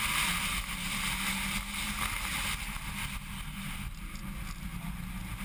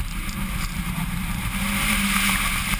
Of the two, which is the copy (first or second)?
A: second